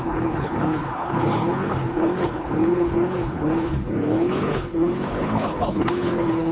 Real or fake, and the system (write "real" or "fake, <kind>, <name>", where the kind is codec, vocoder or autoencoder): fake, codec, HILCodec